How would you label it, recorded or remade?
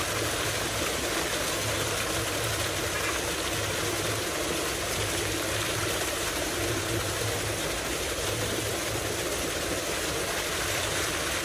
recorded